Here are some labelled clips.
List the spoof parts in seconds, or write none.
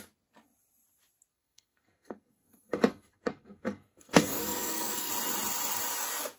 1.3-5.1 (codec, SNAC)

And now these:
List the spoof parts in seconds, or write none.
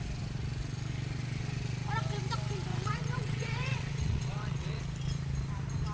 2.7-4.8 (vocoder, WaveNeXt)